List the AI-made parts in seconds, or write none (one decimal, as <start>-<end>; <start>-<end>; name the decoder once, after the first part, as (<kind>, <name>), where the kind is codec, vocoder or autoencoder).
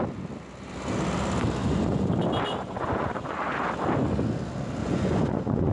1.6-2.1 (vocoder, Vocos); 2.6-3.4; 4.8-5.7